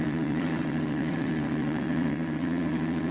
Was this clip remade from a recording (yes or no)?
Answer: yes